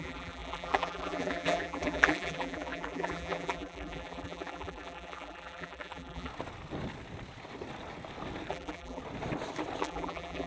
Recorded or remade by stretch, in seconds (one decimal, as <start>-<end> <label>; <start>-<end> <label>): 0.0-6.3 remade; 6.3-8.5 recorded; 8.5-9.0 remade; 9.0-9.8 recorded; 9.8-10.5 remade